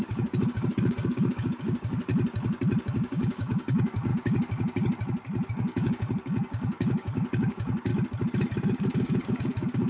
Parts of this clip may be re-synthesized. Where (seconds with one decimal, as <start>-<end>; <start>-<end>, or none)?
0.0-2.1; 2.9-4.1; 5.5-7.9; 8.6-9.9